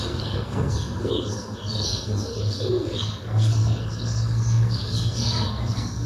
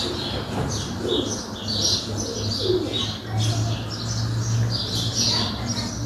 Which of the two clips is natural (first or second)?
second